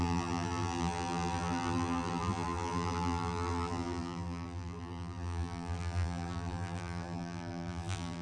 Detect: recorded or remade remade